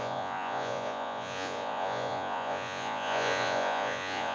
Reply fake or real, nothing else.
fake